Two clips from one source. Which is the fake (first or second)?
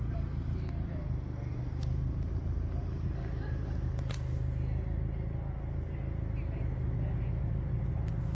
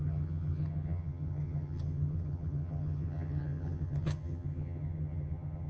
second